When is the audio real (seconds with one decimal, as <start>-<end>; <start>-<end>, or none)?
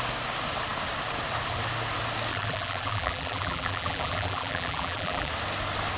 0.0-2.3; 5.3-6.0